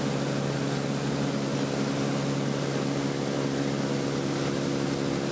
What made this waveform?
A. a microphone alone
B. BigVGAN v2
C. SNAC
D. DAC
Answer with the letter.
A